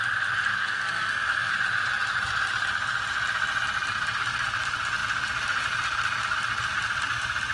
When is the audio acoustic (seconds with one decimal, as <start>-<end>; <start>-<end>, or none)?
0.0-0.5; 1.5-7.5